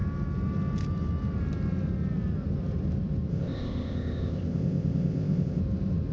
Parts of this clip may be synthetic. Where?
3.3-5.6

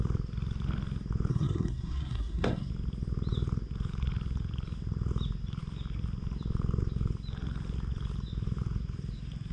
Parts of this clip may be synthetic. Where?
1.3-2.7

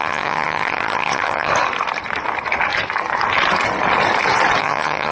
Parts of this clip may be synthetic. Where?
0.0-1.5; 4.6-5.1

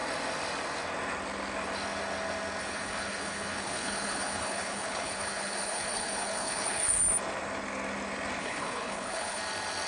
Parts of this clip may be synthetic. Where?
2.6-7.0; 8.4-9.4

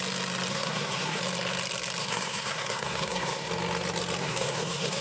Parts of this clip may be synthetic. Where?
0.5-1.2; 2.0-3.5; 4.2-5.0